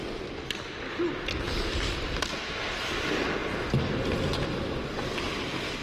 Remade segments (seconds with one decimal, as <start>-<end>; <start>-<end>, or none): none